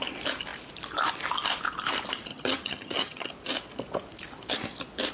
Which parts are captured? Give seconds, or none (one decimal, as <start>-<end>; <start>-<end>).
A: 0.0-2.3; 3.3-5.1